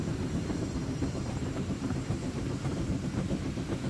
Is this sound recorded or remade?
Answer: remade